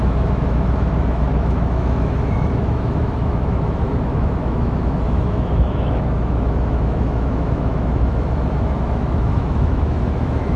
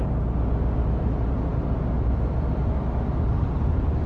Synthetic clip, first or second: first